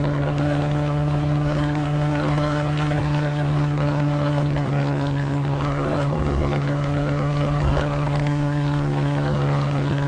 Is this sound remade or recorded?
remade